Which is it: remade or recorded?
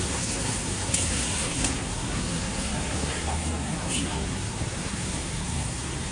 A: remade